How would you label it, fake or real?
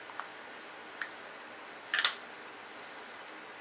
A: real